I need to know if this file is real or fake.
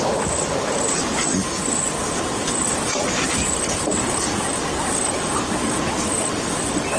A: real